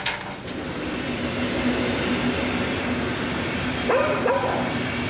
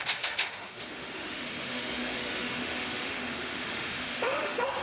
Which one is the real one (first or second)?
first